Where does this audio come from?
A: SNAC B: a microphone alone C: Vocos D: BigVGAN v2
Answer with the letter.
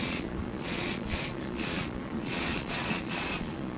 C